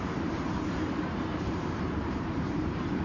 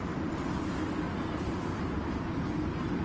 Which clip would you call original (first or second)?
second